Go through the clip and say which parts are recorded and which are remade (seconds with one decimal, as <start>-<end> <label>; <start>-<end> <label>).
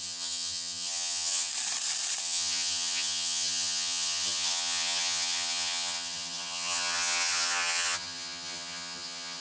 0.0-1.5 remade; 1.5-2.2 recorded; 2.2-9.4 remade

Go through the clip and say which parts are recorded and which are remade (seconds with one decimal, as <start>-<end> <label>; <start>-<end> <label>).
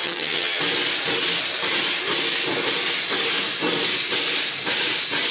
0.0-0.6 remade; 0.6-5.3 recorded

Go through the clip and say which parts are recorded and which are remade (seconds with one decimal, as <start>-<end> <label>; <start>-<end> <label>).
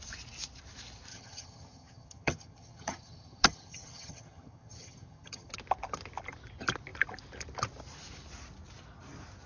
0.0-1.1 recorded; 1.1-5.5 remade; 5.5-9.5 recorded